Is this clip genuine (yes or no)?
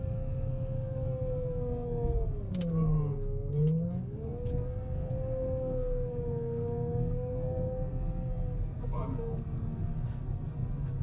no